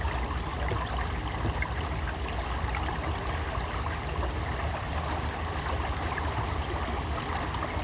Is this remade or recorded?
recorded